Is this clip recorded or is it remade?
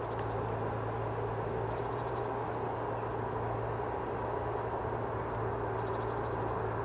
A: recorded